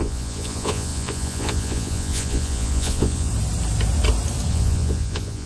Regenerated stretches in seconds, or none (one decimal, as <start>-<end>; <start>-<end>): 0.0-3.3; 4.5-5.5